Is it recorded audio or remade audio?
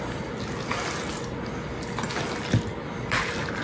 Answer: recorded